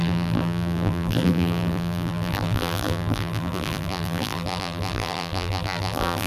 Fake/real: fake